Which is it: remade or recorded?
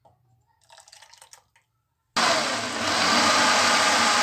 recorded